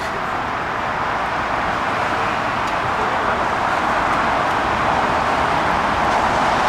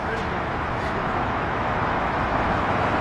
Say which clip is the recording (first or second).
first